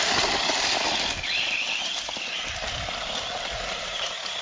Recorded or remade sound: recorded